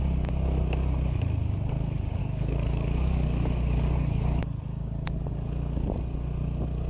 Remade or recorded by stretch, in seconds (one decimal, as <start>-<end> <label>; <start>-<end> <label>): 0.0-2.2 recorded; 2.2-4.4 remade; 4.4-6.9 recorded